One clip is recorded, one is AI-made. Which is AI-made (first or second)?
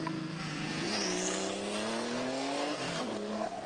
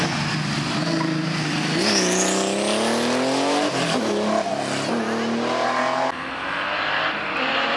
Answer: first